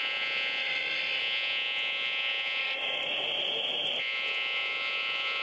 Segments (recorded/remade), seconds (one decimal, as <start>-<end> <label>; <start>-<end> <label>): 0.0-0.6 remade; 0.6-1.2 recorded; 1.2-2.6 remade; 2.6-4.0 recorded; 4.0-5.4 remade

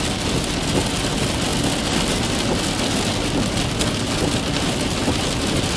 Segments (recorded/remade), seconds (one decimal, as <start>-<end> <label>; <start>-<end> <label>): 0.0-5.8 recorded

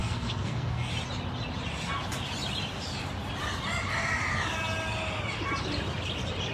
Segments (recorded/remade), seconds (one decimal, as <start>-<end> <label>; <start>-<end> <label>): 0.0-0.9 remade; 0.9-6.5 recorded